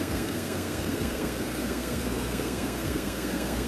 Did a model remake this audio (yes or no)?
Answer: yes